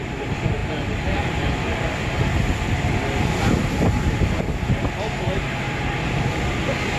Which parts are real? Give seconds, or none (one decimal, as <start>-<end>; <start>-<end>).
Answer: 0.0-7.0

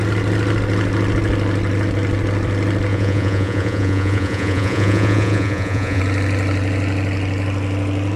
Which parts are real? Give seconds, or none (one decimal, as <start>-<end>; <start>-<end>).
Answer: 0.0-2.9; 6.0-8.2